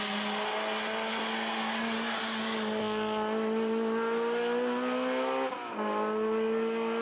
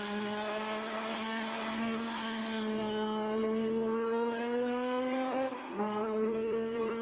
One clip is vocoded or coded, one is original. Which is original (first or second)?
first